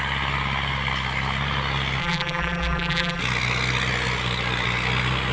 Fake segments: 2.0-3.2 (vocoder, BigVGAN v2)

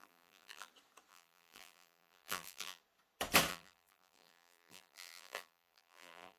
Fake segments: 0.0-0.7 (vocoder, BigVGAN v2); 1.1-2.8; 3.5-6.4

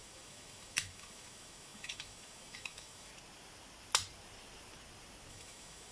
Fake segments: 0.0-3.1 (autoencoder, DAC-VAE); 5.3-5.9

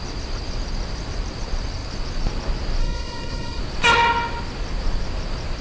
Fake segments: 2.8-3.6 (codec, SNAC)

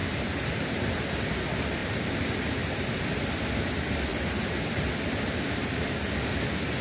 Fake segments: 0.0-0.9 (vocoder, BigVGAN v2); 4.1-4.9

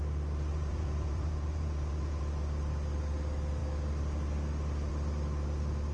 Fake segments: 0.5-2.2 (vocoder, Vocos)

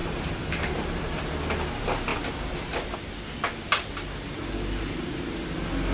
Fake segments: 0.0-1.3 (vocoder, BigVGAN v2)

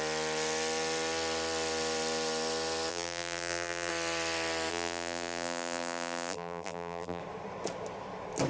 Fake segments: 2.9-3.9 (vocoder, BigVGAN v2); 4.7-7.2